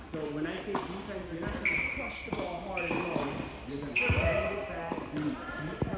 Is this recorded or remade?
recorded